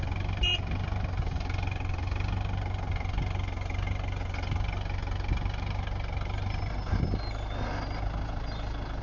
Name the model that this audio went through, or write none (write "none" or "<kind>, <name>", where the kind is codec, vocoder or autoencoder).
none